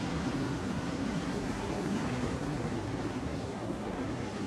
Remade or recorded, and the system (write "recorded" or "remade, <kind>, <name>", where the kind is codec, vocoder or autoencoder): remade, codec, SNAC